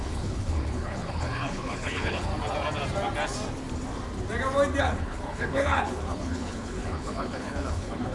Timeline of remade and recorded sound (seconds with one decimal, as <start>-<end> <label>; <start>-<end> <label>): 0.0-2.3 remade; 2.3-4.8 recorded; 4.8-8.1 remade